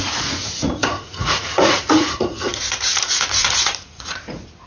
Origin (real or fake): fake